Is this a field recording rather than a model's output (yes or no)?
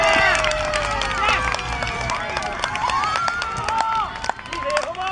yes